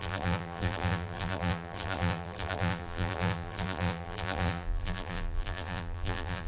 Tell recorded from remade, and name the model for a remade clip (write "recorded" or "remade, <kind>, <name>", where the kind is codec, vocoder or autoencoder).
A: remade, vocoder, BigVGAN v2